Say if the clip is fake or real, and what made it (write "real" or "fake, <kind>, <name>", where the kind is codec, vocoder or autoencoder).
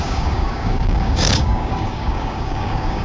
fake, codec, DAC